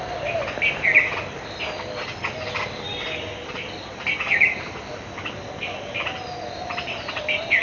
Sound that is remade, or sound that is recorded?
recorded